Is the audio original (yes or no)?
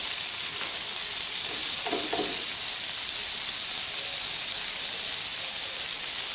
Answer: yes